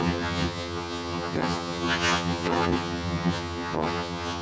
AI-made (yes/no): yes